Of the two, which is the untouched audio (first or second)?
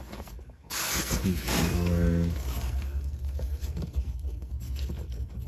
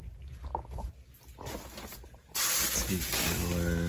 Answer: second